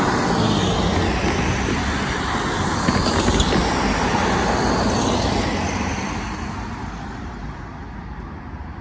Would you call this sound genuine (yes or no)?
yes